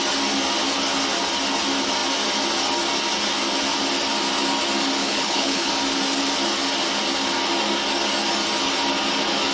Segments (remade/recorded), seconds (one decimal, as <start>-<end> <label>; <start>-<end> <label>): 0.0-5.0 recorded; 5.0-5.7 remade; 5.7-9.5 recorded